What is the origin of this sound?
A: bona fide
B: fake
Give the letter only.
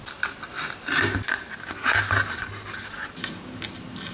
A